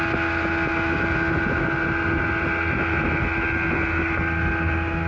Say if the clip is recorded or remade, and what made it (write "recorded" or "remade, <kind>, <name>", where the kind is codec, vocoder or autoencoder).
recorded